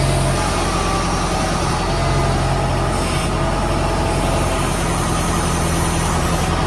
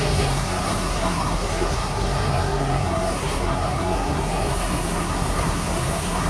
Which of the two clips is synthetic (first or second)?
second